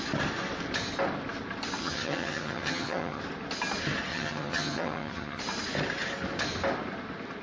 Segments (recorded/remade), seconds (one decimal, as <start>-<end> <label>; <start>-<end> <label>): 0.0-1.8 recorded; 1.8-3.2 remade; 3.2-4.1 recorded; 4.1-5.4 remade; 5.4-7.4 recorded